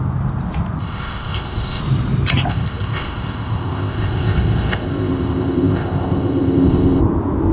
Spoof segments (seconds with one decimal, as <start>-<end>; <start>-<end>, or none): 0.8-1.8; 2.5-7.0